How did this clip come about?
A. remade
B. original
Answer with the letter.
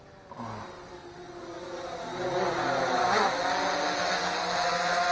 B